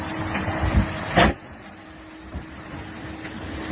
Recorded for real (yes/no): yes